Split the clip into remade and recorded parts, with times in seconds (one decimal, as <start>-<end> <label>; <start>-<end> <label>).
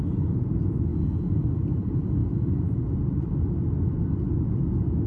0.0-0.9 recorded; 0.9-1.5 remade; 1.5-2.2 recorded; 2.2-2.9 remade; 2.9-5.1 recorded